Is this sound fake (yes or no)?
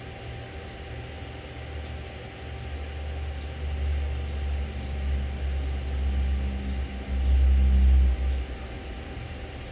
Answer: no